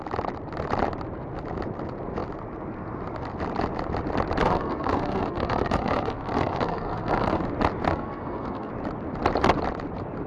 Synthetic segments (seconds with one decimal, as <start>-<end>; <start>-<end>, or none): 4.4-7.4; 7.9-8.7